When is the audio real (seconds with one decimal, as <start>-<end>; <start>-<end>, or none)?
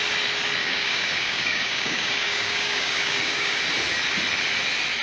0.0-0.6; 3.6-5.0